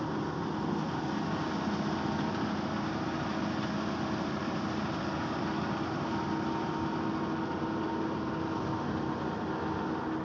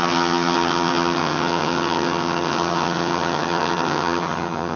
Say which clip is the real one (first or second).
first